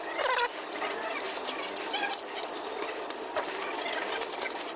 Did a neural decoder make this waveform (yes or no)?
no